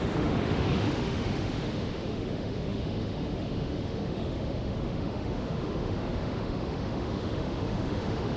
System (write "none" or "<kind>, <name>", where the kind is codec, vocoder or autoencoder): autoencoder, DAC-VAE